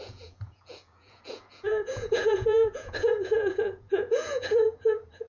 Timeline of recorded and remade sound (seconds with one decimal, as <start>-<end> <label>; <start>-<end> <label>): 0.0-5.3 remade